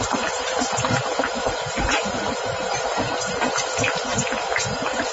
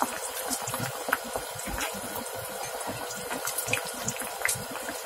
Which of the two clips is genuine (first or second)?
second